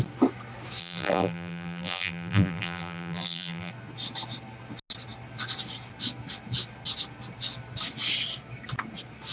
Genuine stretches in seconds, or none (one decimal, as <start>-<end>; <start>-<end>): 0.0-0.8; 3.7-9.3